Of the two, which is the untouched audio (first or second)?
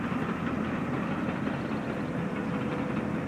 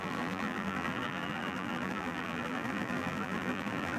first